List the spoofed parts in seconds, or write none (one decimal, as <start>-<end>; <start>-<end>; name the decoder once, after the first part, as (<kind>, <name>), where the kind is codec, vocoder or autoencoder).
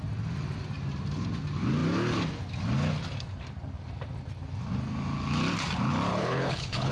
6.1-6.9 (codec, HILCodec)